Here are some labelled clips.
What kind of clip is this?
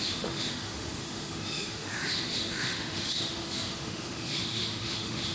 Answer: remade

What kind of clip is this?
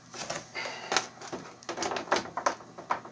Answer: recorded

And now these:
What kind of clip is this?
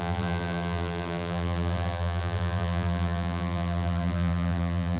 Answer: remade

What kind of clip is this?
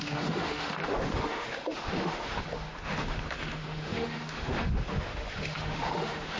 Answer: remade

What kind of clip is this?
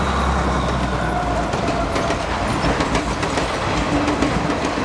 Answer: recorded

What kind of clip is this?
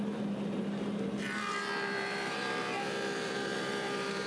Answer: remade